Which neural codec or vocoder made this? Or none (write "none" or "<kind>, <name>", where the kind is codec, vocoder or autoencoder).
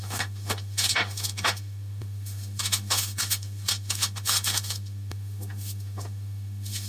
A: autoencoder, DAC-VAE